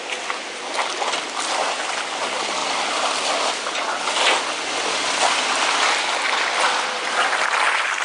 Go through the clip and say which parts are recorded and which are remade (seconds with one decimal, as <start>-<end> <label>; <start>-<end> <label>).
0.0-8.0 recorded